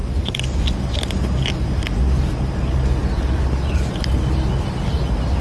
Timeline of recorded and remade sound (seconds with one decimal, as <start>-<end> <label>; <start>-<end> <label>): 0.0-5.4 recorded